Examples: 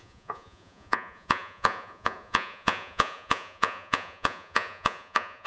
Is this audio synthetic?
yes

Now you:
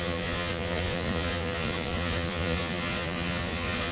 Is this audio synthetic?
yes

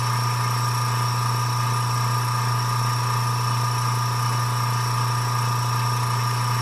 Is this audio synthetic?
no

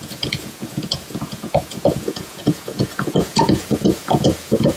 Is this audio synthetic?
yes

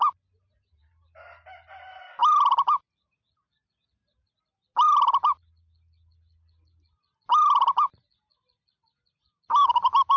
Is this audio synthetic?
no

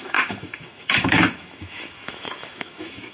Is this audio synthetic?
yes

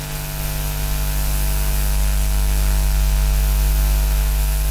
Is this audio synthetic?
no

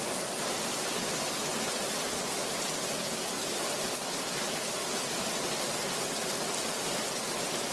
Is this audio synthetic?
no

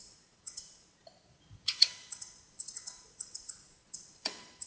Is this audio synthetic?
yes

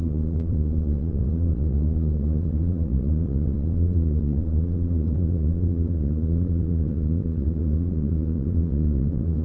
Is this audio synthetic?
yes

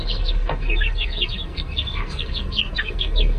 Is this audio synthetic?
yes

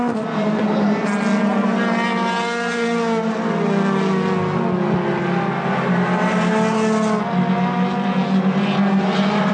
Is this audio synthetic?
no